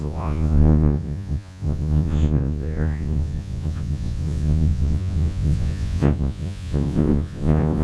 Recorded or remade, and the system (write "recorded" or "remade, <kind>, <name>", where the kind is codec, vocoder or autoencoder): remade, vocoder, Vocos